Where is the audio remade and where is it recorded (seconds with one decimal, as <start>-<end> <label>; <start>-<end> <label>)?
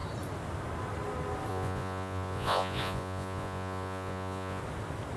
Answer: 0.0-1.5 recorded; 1.5-4.6 remade; 4.6-5.2 recorded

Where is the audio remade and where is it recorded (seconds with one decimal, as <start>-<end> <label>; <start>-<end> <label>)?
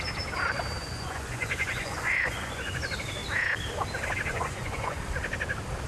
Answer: 0.0-0.8 recorded; 0.8-2.8 remade; 2.8-4.3 recorded; 4.3-5.0 remade; 5.0-5.9 recorded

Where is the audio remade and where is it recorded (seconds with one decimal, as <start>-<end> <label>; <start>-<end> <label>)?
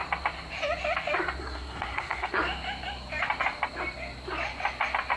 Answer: 0.0-1.4 recorded; 1.4-2.4 remade; 2.4-5.2 recorded